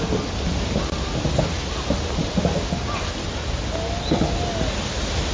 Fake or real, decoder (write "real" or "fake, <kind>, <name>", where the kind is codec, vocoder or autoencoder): real